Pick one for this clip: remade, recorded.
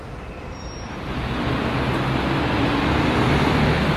recorded